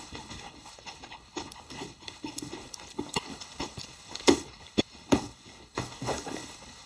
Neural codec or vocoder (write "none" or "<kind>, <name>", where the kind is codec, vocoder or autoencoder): codec, HILCodec